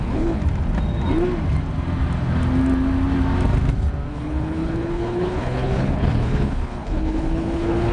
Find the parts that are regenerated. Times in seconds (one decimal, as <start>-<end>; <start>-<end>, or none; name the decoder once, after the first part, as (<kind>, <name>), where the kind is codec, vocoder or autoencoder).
0.0-0.4 (codec, HILCodec); 4.1-7.9